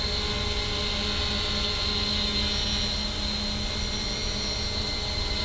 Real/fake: real